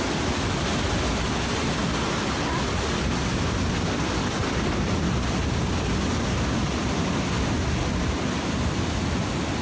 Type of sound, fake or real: real